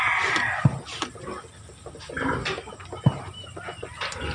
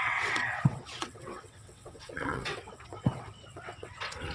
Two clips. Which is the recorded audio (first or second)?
first